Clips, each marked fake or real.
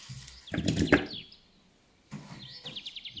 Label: real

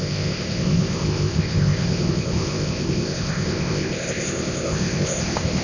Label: fake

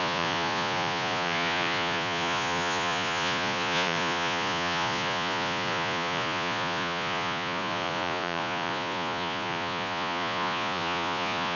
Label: fake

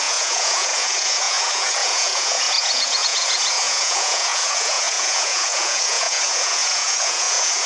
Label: fake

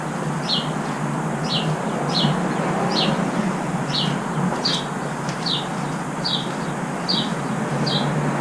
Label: real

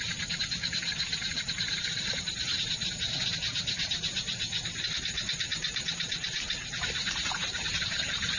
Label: fake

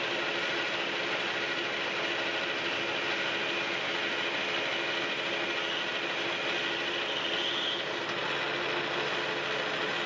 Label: real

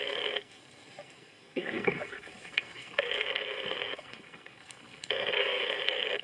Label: fake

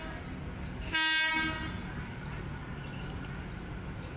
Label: real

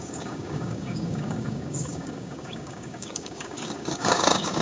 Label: fake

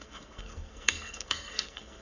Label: fake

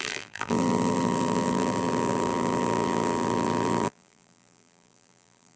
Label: fake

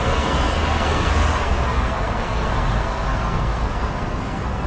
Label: fake